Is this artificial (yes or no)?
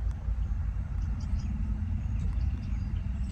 yes